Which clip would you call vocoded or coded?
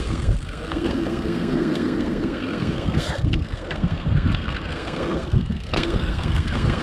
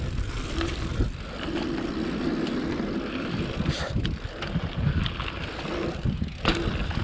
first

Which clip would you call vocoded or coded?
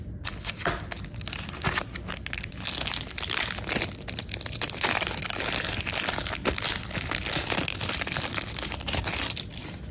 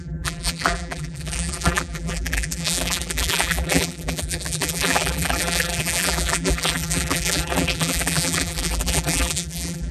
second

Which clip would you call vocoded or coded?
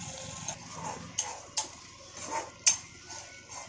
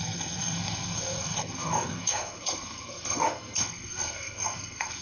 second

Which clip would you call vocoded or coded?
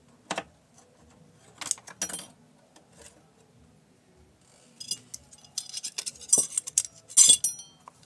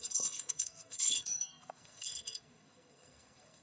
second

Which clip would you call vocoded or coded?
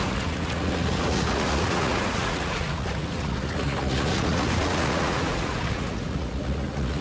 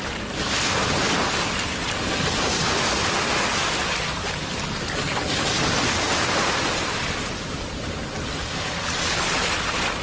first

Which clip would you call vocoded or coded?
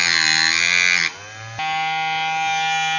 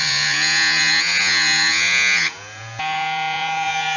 second